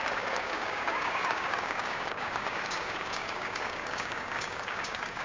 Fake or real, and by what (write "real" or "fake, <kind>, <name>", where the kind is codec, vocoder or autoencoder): fake, codec, DAC